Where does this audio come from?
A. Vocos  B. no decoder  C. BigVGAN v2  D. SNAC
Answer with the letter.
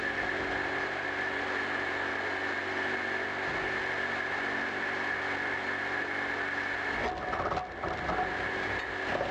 B